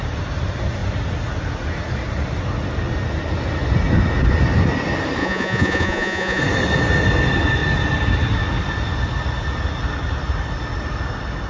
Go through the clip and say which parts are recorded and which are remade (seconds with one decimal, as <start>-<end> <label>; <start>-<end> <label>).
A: 0.0-5.2 recorded; 5.2-6.4 remade; 6.4-11.5 recorded